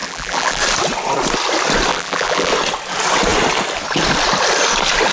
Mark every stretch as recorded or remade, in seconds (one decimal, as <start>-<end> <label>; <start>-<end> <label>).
0.0-0.6 remade; 0.6-1.9 recorded; 1.9-2.5 remade; 2.5-5.1 recorded